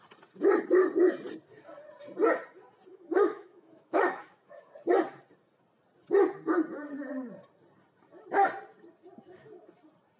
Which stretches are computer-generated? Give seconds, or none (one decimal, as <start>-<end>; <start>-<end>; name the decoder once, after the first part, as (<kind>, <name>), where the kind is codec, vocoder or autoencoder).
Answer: 2.9-4.7 (autoencoder, DAC-VAE)